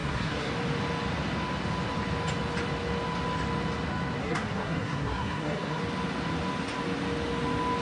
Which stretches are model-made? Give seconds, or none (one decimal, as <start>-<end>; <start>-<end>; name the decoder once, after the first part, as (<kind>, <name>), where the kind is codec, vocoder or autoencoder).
0.0-0.5 (codec, SNAC); 4.2-5.8